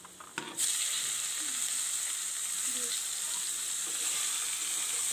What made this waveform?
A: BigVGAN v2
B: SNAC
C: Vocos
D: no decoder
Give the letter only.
D